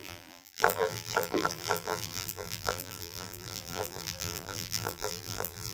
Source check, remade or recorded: remade